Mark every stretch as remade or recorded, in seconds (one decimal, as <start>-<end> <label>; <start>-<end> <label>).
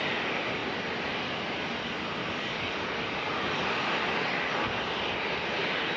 0.0-2.2 recorded; 2.2-4.8 remade; 4.8-6.0 recorded